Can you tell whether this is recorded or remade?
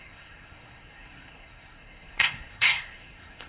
remade